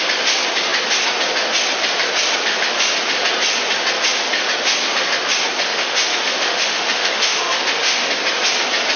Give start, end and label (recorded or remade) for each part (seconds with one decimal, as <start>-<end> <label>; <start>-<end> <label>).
0.0-5.7 recorded; 5.7-8.1 remade; 8.1-9.0 recorded